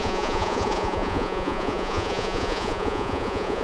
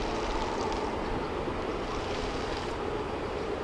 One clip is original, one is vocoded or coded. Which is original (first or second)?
second